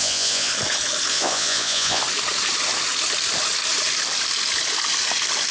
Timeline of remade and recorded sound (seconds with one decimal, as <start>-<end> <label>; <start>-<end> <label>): 0.0-0.5 remade; 0.5-1.1 recorded; 1.1-2.0 remade; 2.0-5.5 recorded